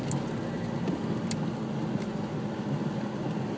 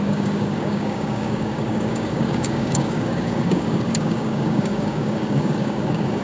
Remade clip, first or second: second